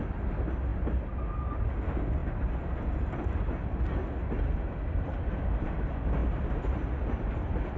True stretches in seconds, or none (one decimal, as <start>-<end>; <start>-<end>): 0.0-6.2